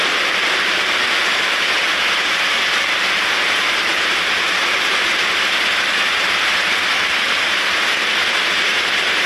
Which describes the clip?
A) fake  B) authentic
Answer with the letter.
A